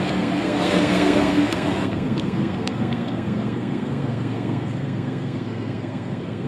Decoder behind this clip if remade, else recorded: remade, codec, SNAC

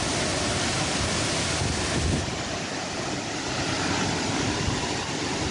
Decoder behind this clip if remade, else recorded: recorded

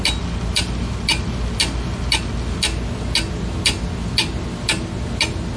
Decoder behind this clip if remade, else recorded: recorded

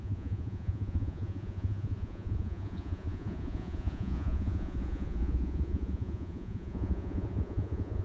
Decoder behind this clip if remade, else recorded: remade, vocoder, Vocos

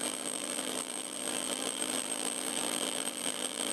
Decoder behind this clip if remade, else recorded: remade, vocoder, BigVGAN v2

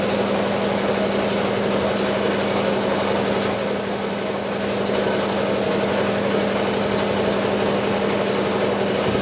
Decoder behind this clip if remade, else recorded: recorded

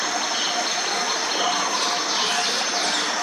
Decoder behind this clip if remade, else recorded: recorded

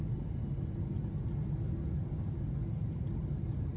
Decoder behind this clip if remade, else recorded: recorded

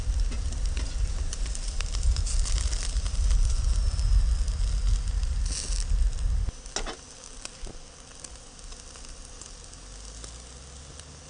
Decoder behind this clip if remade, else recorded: recorded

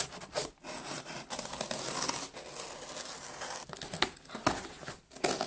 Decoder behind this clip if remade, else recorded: recorded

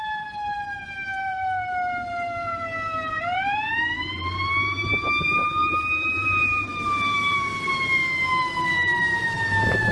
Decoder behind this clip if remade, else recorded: remade, vocoder, BigVGAN v2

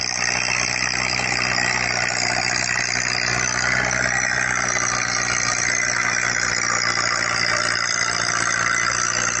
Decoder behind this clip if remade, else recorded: recorded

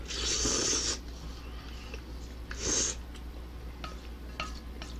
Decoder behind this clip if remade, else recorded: recorded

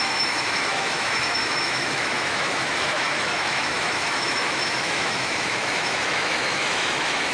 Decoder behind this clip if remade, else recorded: remade, autoencoder, DAC-VAE